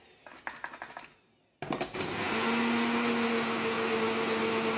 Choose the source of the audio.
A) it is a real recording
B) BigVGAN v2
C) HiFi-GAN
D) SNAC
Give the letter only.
A